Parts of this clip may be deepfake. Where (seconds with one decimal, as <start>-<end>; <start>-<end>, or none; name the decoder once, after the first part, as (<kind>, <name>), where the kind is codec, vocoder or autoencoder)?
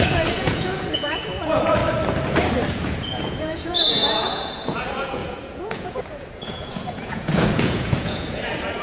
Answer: 0.0-1.8 (vocoder, Vocos); 2.7-8.8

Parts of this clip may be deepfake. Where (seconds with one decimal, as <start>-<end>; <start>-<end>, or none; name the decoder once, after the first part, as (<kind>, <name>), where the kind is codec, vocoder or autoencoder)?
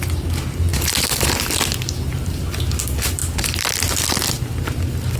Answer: none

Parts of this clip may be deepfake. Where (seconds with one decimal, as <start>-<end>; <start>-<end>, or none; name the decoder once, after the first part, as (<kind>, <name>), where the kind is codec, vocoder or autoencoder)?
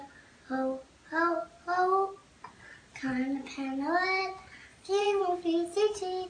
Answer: 4.7-5.2 (vocoder, Vocos)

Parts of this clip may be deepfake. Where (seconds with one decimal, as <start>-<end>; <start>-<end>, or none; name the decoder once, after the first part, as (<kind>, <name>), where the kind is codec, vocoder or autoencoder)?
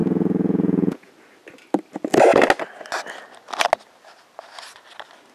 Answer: 0.0-1.1 (vocoder, Vocos)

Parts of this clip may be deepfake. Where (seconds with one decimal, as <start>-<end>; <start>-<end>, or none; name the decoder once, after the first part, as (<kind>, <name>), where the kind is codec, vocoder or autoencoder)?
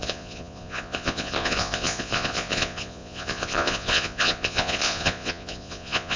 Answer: 0.0-6.2 (vocoder, Vocos)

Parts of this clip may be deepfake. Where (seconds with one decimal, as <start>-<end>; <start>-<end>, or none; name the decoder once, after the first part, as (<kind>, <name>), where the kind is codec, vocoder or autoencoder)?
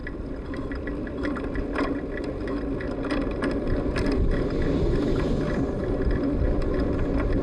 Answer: none